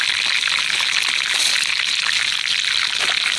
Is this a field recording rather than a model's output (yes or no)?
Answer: yes